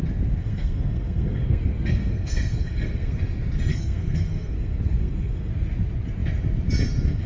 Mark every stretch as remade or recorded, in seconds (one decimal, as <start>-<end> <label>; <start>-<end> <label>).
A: 0.0-0.4 recorded; 0.4-3.2 remade; 3.2-3.7 recorded; 3.7-5.5 remade; 5.5-7.3 recorded